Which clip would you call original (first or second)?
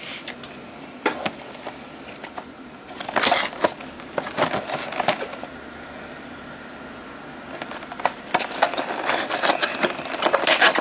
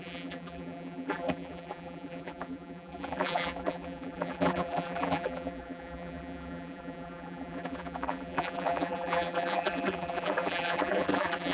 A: first